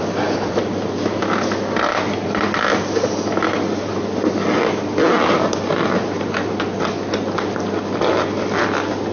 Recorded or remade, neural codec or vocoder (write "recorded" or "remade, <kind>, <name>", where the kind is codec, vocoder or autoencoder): recorded